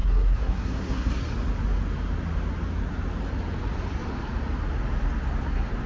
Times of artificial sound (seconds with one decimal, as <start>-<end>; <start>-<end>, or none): 0.0-1.1